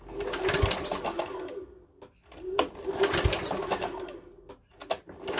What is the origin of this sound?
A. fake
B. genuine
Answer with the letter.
B